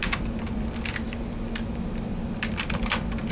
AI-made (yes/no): no